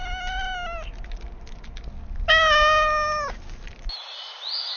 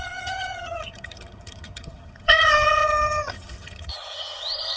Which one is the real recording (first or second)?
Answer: first